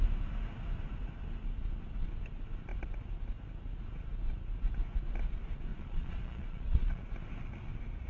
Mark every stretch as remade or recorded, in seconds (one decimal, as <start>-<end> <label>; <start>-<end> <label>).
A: 0.0-5.7 recorded; 5.7-7.1 remade; 7.1-8.1 recorded